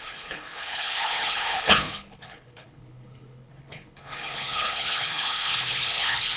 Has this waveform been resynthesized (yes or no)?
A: yes